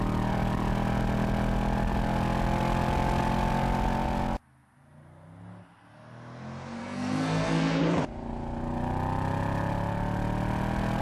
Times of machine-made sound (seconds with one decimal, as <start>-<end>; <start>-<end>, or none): 6.8-7.8